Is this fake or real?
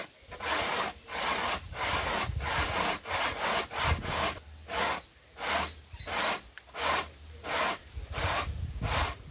real